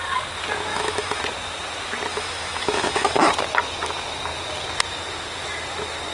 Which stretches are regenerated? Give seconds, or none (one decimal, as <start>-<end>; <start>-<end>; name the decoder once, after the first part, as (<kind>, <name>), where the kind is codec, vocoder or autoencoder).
0.7-1.2 (autoencoder, DAC-VAE); 2.1-3.3